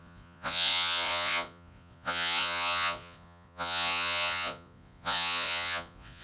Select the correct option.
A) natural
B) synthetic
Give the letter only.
B